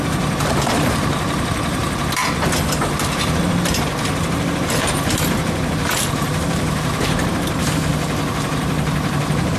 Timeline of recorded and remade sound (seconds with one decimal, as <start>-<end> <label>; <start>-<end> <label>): 0.0-2.2 remade; 2.2-2.8 recorded; 2.8-7.9 remade; 7.9-8.4 recorded; 8.4-9.6 remade